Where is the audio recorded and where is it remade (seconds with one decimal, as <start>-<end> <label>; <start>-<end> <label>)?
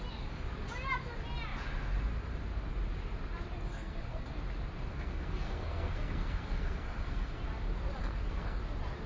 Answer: 0.0-3.7 recorded; 3.7-4.3 remade; 4.3-4.9 recorded; 4.9-7.4 remade; 7.4-8.0 recorded; 8.0-8.6 remade; 8.6-9.1 recorded